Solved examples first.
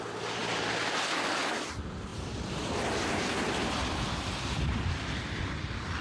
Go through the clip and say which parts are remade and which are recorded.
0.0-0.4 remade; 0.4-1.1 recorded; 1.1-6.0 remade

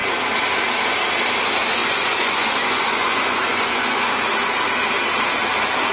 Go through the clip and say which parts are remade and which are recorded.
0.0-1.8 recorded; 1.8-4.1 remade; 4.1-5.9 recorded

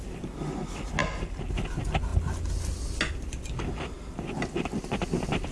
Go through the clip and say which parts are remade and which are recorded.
0.0-5.5 recorded